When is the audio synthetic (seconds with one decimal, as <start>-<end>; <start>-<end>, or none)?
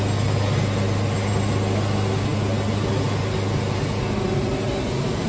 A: none